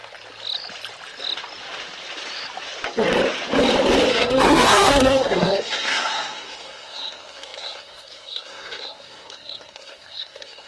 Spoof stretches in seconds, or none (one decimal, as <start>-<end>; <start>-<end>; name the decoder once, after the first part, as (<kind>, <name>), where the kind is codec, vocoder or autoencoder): 4.1-10.7 (codec, SNAC)